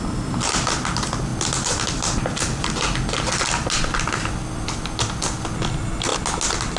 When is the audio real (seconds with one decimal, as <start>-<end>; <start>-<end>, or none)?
0.0-6.8

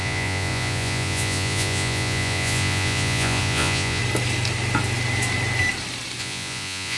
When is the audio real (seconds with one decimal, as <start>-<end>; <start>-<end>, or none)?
4.0-6.2